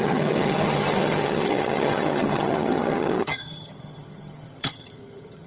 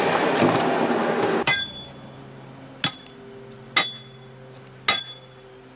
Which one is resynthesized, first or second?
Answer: first